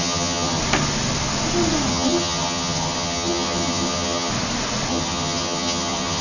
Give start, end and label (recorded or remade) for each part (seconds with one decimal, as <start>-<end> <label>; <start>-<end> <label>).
0.0-0.6 remade; 0.6-1.9 recorded; 1.9-4.3 remade; 4.3-4.9 recorded; 4.9-6.2 remade